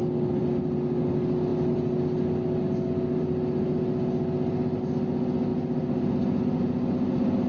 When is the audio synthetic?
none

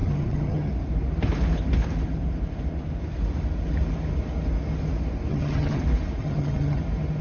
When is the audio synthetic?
0.0-0.7 (vocoder, HiFi-GAN); 5.3-5.8; 6.2-6.8

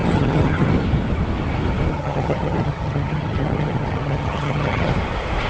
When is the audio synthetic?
0.0-0.7 (vocoder, HiFi-GAN); 1.9-4.9

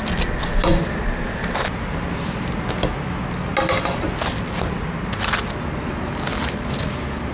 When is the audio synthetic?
none

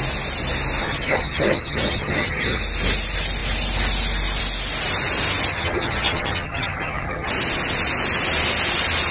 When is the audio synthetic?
0.8-2.6 (vocoder, HiFi-GAN); 5.5-7.3

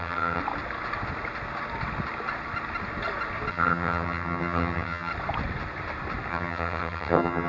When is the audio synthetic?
0.0-0.4 (vocoder, HiFi-GAN); 3.5-5.1; 6.3-7.5

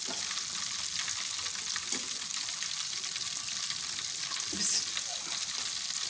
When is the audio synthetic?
none